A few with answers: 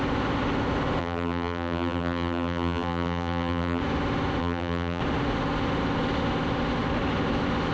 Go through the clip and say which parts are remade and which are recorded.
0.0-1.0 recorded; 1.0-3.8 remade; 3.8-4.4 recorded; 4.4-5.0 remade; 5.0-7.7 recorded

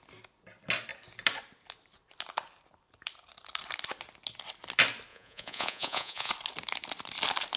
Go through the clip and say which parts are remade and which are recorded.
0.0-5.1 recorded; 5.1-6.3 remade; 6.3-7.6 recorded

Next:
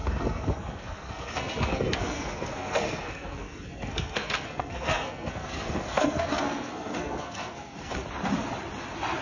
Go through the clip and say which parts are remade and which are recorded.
0.0-8.0 remade; 8.0-9.2 recorded